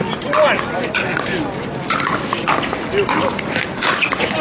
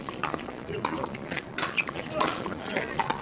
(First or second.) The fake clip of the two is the second